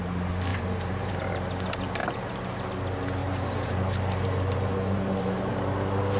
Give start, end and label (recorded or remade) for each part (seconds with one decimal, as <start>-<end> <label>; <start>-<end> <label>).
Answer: 0.0-0.5 recorded; 0.5-1.1 remade; 1.1-2.0 recorded; 2.0-2.7 remade; 2.7-3.2 recorded; 3.2-5.5 remade; 5.5-6.2 recorded